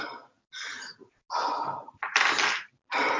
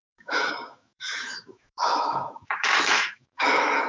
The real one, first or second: first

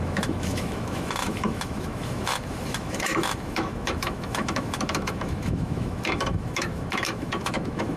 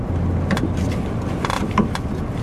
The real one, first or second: second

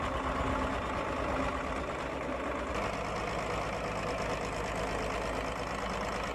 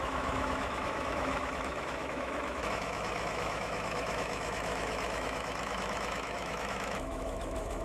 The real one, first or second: first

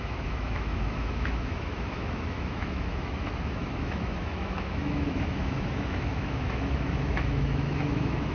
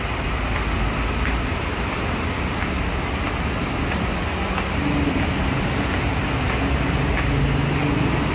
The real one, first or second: second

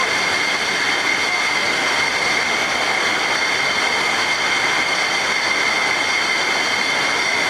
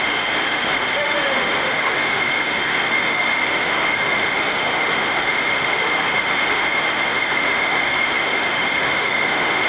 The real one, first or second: first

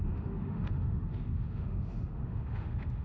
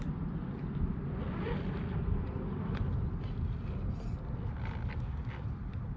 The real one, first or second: second